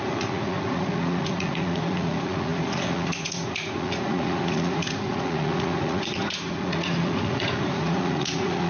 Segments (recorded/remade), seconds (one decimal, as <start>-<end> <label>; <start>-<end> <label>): 0.0-8.7 remade